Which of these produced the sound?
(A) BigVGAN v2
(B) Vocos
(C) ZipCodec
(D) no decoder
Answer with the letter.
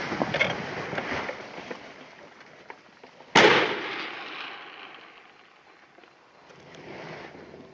D